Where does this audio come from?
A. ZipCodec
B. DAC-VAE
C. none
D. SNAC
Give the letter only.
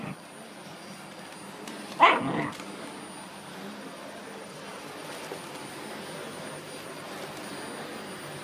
C